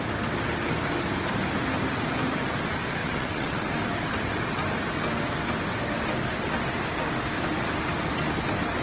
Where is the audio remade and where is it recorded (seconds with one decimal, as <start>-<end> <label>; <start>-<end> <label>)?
0.0-3.0 recorded; 3.0-3.7 remade; 3.7-8.8 recorded